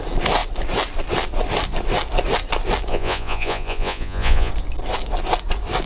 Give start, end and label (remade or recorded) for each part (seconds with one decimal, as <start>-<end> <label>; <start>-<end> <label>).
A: 0.0-2.9 recorded; 2.9-4.5 remade; 4.5-5.9 recorded